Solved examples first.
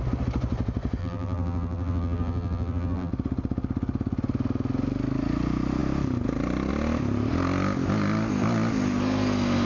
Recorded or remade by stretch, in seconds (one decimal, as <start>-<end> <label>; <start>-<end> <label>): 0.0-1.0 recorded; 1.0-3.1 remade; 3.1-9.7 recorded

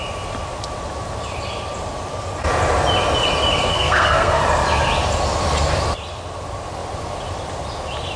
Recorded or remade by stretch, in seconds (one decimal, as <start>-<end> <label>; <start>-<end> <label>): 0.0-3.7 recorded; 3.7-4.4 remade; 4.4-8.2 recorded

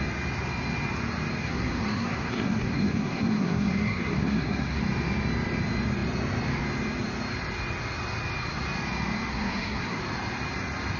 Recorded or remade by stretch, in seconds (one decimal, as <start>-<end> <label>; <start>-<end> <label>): 0.0-1.4 recorded; 1.4-4.8 remade; 4.8-9.3 recorded; 9.3-10.0 remade; 10.0-11.0 recorded